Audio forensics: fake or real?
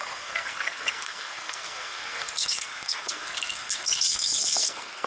fake